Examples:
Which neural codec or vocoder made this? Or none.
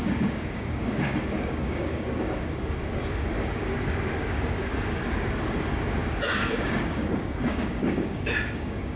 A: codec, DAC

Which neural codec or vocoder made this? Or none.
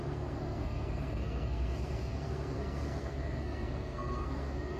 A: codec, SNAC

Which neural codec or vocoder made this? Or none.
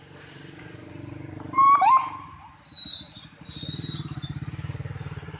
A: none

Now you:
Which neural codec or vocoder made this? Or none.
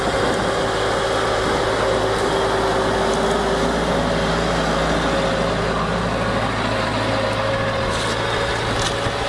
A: none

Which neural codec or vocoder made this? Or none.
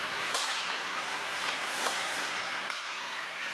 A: codec, SNAC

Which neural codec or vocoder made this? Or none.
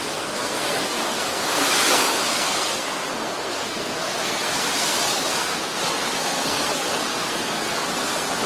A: codec, SNAC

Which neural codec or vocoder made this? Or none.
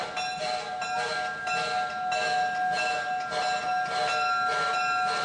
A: none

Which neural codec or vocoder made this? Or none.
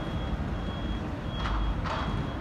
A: none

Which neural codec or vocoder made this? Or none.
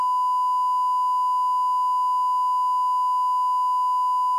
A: none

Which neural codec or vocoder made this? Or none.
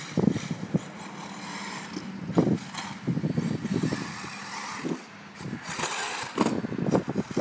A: none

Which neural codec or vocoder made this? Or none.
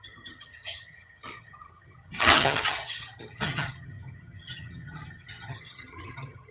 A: vocoder, HiFi-GAN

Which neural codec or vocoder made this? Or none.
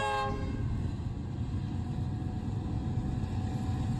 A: none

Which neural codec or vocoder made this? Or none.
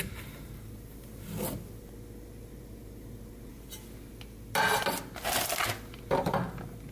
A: none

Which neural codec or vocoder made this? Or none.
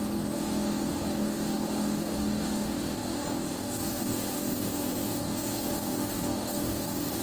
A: codec, DAC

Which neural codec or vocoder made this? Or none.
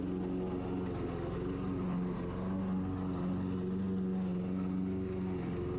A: none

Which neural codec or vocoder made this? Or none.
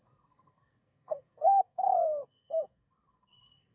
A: codec, SNAC